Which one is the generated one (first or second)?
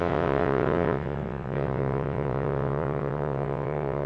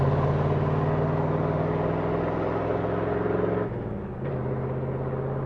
first